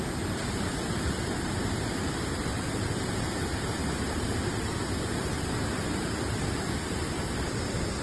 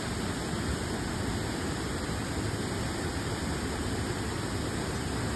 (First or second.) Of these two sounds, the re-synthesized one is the first